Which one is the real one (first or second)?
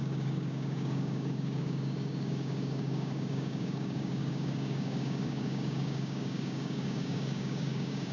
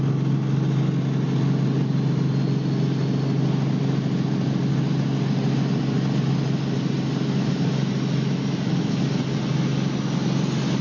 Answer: second